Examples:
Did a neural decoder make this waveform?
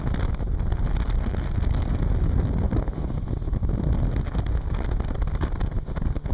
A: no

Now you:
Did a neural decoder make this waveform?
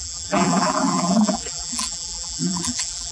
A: yes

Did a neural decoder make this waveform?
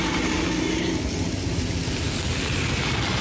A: no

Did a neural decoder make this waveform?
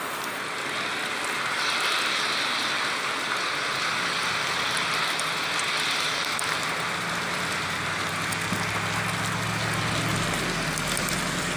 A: no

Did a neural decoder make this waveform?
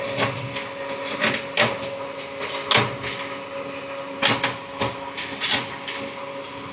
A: no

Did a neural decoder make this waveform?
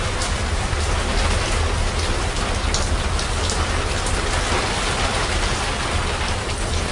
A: no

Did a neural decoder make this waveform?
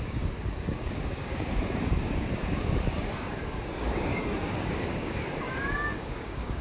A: yes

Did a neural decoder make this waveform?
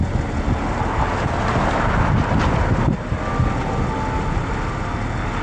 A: no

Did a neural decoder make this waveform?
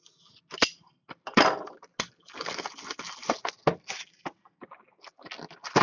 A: no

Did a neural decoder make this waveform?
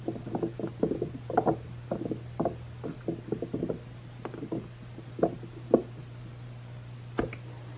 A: yes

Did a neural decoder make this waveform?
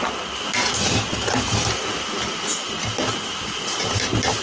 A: no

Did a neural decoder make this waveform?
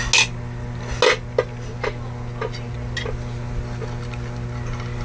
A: no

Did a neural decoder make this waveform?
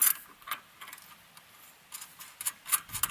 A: no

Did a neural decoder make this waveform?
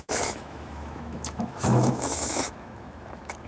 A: yes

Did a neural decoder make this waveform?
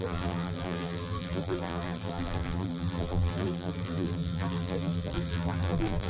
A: yes